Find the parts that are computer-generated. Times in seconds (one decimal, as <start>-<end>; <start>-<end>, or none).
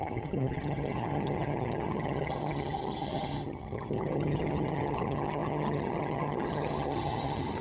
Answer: 0.0-7.6